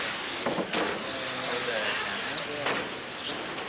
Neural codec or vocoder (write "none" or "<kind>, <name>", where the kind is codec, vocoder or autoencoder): none